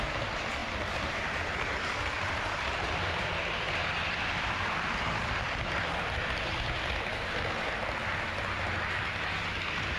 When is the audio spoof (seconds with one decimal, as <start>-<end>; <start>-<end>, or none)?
0.6-3.3; 4.0-7.1

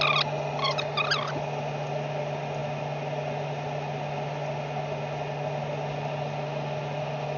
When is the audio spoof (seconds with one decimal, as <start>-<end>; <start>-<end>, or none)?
none